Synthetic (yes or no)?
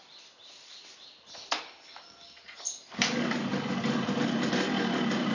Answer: no